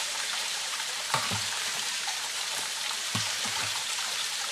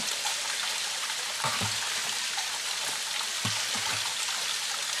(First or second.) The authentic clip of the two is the second